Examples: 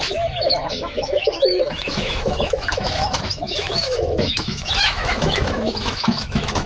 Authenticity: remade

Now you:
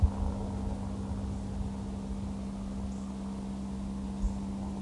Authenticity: recorded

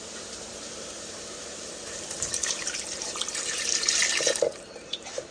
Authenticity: remade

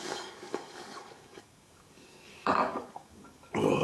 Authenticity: remade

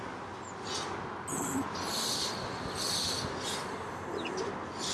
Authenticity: recorded